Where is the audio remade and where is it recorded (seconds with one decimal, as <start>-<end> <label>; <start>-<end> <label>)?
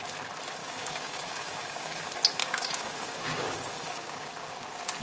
0.0-0.6 recorded; 0.6-2.0 remade; 2.0-2.4 recorded; 2.4-4.6 remade; 4.6-5.0 recorded